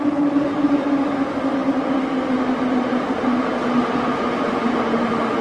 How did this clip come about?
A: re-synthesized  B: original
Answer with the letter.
B